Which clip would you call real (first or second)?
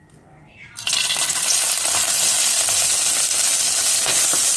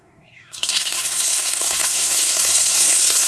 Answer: first